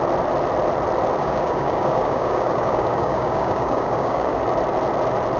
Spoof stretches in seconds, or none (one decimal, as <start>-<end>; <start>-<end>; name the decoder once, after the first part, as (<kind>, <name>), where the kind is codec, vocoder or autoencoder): 1.2-4.4 (codec, DAC)